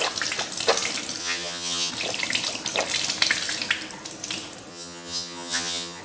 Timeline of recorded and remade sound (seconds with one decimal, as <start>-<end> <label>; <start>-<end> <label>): 0.0-1.2 recorded; 1.2-1.9 remade; 1.9-4.7 recorded; 4.7-6.0 remade